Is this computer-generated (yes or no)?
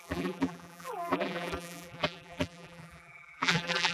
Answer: yes